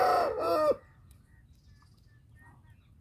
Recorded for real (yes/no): yes